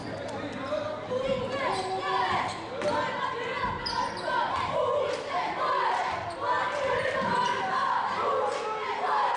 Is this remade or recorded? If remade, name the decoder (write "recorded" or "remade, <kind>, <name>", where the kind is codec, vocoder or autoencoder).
recorded